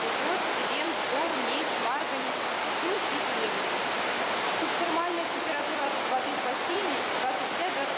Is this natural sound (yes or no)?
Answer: no